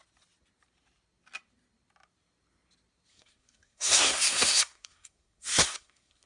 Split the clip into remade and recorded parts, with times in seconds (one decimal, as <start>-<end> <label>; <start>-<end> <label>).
0.0-3.1 recorded; 3.1-6.3 remade